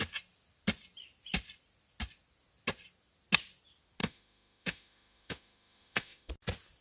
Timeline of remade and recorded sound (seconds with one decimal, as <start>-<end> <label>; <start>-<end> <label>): 0.0-4.0 recorded; 4.0-6.3 remade; 6.3-6.8 recorded